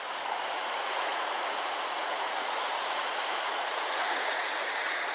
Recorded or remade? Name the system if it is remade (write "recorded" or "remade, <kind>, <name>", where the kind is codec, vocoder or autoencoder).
remade, vocoder, Vocos